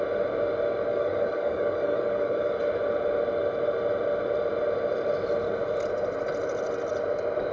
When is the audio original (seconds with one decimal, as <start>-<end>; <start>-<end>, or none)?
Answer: 0.0-0.9; 2.6-7.5